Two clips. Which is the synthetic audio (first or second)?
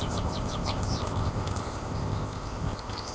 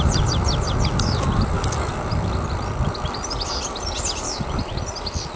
first